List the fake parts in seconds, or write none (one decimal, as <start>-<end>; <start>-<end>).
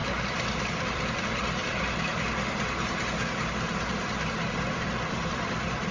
0.0-2.1; 3.5-5.9